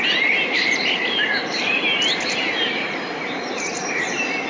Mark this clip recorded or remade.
recorded